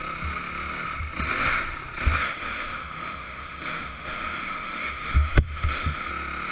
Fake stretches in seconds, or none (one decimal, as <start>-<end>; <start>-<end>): 2.2-6.1